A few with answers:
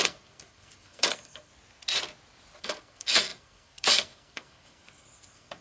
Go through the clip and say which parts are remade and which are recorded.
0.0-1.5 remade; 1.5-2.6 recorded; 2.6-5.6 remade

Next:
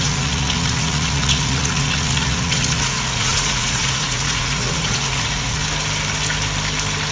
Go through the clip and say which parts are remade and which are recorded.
0.0-5.6 remade; 5.6-7.1 recorded

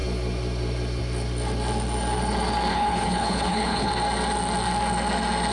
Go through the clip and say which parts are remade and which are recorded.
0.0-2.7 recorded; 2.7-3.9 remade; 3.9-5.5 recorded

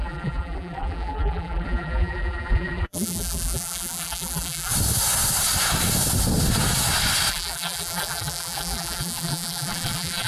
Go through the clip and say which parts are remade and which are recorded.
0.0-4.7 remade; 4.7-7.3 recorded; 7.3-10.3 remade

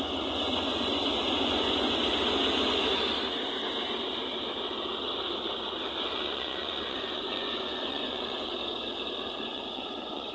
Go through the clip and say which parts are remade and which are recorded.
0.0-2.1 remade; 2.1-6.1 recorded; 6.1-8.5 remade; 8.5-9.4 recorded; 9.4-10.3 remade